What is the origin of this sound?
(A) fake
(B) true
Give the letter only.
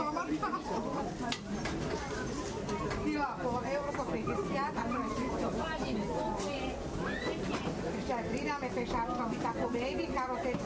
B